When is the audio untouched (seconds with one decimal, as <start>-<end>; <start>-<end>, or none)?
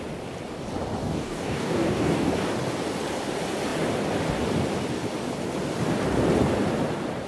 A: 0.0-1.0; 2.3-7.3